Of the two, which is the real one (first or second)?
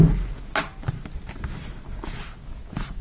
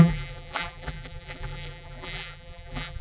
first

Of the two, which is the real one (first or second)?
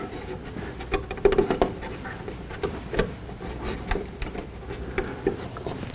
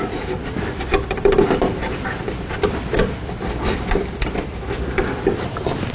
first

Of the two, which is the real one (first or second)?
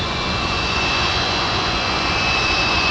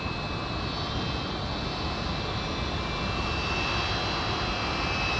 second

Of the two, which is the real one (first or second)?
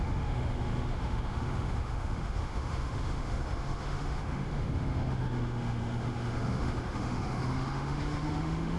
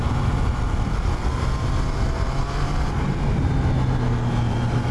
second